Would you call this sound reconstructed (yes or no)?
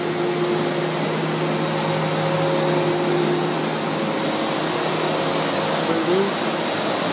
no